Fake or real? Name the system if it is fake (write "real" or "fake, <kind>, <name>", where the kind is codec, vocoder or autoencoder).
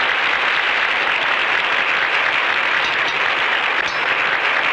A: real